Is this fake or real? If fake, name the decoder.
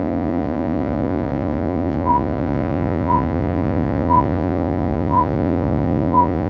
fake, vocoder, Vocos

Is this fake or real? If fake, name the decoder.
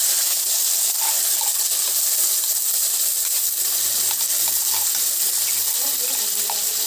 real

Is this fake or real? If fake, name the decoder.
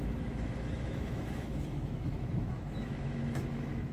fake, autoencoder, DAC-VAE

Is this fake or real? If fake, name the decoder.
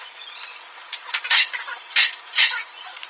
fake, vocoder, Vocos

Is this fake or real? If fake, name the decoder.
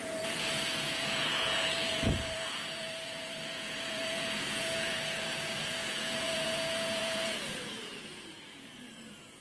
fake, vocoder, Vocos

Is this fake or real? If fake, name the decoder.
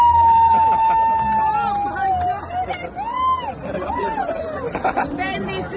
real